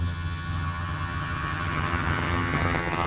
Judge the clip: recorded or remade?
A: remade